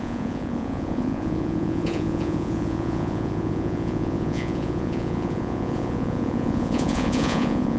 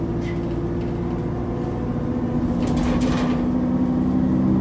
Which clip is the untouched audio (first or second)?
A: second